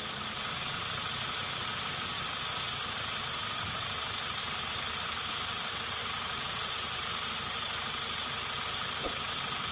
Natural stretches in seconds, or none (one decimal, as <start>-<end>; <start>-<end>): 0.6-4.4; 4.9-6.0; 6.7-9.7

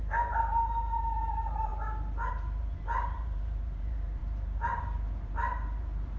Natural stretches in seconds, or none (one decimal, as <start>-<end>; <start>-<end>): 1.7-2.3

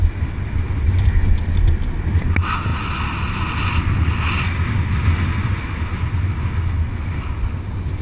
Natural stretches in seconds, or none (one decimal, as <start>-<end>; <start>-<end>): 0.0-8.0